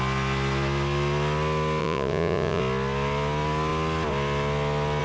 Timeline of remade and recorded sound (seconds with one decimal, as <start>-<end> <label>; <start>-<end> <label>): 0.0-1.8 recorded; 1.8-2.6 remade; 2.6-5.0 recorded